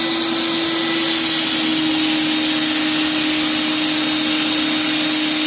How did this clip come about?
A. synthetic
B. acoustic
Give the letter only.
B